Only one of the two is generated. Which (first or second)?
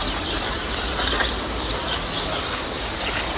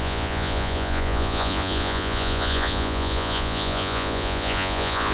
second